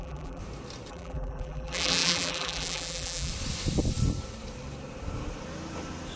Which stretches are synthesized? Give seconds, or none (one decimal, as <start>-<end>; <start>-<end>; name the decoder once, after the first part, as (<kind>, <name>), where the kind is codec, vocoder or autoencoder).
0.0-0.4 (vocoder, BigVGAN v2); 0.9-3.3